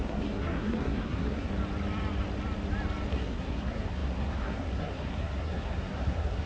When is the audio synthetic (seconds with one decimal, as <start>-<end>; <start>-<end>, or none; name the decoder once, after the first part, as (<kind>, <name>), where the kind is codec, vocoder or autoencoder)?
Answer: 0.0-1.5 (codec, SNAC); 3.1-6.5